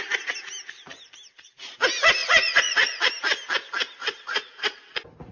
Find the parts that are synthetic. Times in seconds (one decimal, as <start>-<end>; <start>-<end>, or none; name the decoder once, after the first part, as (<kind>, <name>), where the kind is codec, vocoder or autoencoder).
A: 2.2-3.1 (vocoder, Vocos); 4.0-4.8